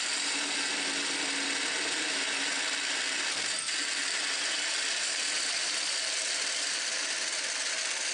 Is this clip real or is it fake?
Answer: real